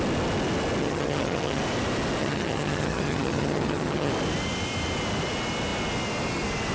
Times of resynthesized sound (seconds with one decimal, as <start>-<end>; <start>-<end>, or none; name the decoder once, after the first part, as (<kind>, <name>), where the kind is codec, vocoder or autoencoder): 0.8-1.6 (vocoder, HiFi-GAN); 2.2-4.1